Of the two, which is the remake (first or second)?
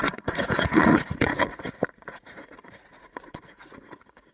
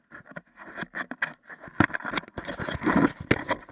first